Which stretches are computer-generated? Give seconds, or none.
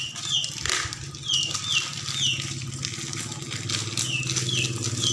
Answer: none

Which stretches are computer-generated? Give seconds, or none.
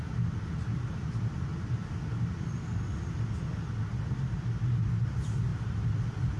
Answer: none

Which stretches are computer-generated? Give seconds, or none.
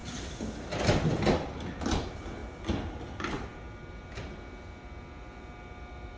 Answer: none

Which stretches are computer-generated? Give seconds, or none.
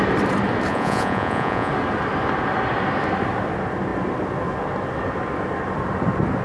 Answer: 0.7-1.7 (vocoder, Vocos)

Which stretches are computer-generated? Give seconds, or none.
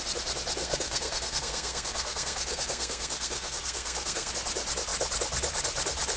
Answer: 0.6-4.3 (codec, SNAC)